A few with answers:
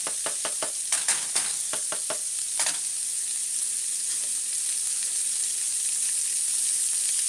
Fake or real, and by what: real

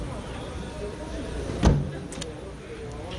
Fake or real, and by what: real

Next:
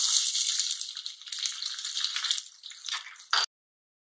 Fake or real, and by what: real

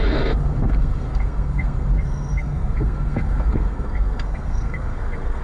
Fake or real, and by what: fake, codec, SNAC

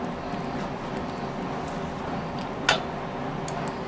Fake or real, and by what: real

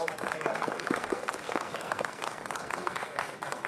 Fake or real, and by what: fake, codec, SNAC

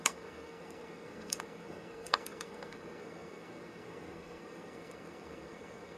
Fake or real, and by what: fake, codec, SNAC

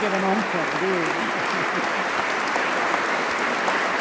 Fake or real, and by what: real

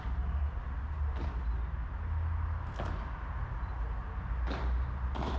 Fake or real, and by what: real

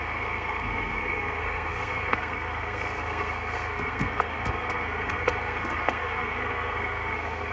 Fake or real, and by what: fake, codec, SNAC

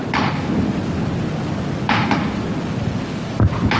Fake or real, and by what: real